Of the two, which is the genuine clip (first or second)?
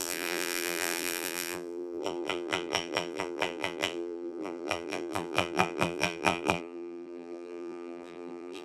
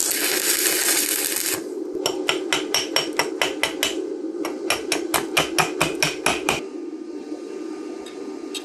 second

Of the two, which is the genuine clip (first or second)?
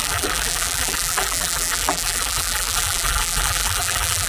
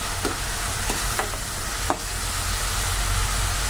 second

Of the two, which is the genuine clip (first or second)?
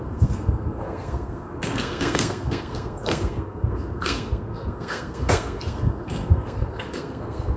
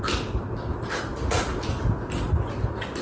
second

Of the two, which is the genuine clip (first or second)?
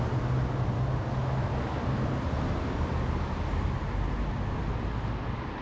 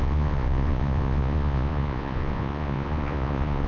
first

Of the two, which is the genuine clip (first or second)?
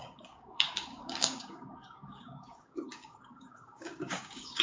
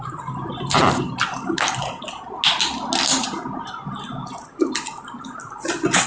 second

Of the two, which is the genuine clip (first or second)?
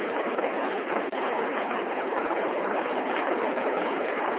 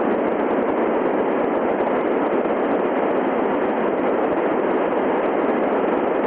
second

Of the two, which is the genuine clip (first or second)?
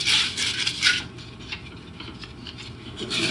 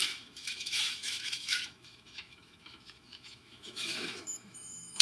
first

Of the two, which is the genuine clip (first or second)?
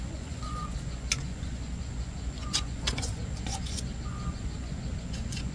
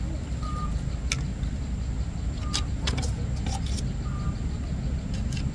second